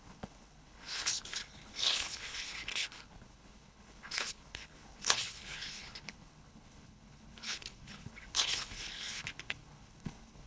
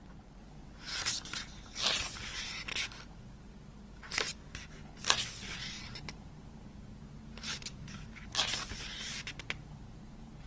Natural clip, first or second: second